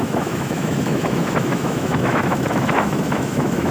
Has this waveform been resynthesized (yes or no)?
yes